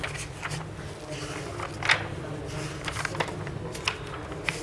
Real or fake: real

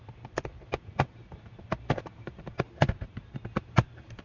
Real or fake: fake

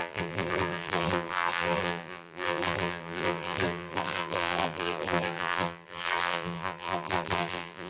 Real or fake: fake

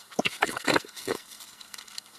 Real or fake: fake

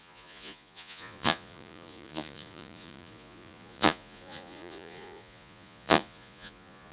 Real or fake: fake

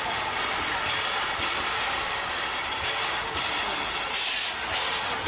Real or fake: real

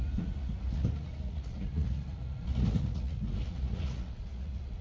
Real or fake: fake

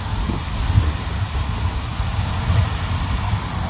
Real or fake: real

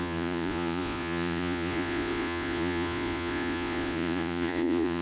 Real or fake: fake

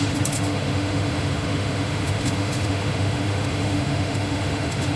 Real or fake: fake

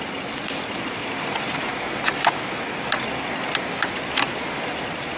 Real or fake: real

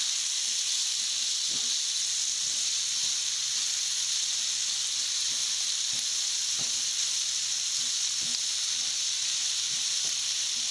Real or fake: real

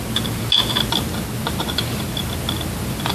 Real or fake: real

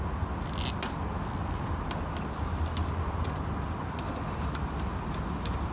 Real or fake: real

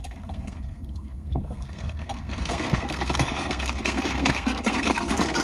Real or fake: fake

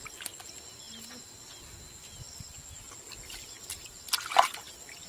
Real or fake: real